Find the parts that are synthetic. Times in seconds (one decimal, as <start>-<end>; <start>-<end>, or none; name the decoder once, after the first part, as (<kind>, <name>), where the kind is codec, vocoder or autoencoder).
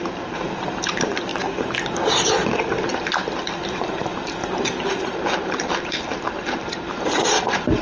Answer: 0.0-1.3 (vocoder, BigVGAN v2); 3.4-4.4; 4.9-7.8